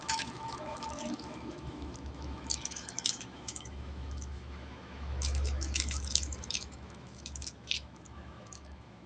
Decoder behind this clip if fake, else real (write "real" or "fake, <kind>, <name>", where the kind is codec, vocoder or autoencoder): fake, autoencoder, DAC-VAE